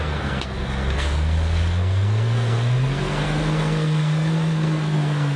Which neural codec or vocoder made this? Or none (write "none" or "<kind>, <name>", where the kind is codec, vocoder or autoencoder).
codec, SNAC